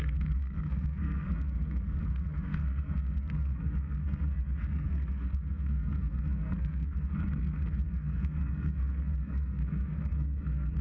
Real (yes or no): no